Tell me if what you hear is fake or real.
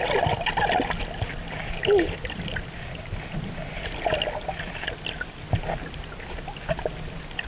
real